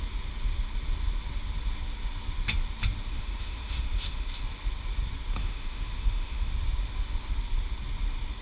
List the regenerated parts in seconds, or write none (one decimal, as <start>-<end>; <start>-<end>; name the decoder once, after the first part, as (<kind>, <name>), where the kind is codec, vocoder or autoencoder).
3.1-4.5 (autoencoder, DAC-VAE); 5.4-6.5